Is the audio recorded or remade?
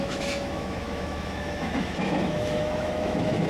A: remade